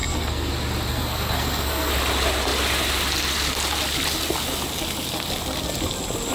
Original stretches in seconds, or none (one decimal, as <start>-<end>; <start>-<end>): 0.5-0.9; 1.9-6.3